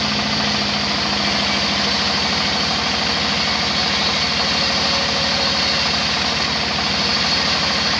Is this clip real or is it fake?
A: real